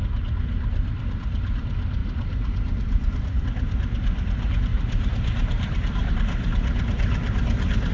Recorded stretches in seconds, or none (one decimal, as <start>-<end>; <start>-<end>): 0.0-2.0; 3.4-4.7; 6.1-7.9